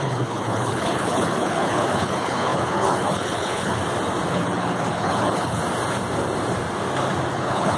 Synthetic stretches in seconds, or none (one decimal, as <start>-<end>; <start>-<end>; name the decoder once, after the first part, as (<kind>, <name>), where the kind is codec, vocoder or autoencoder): 0.0-3.8 (codec, HILCodec); 4.3-5.6; 7.3-7.8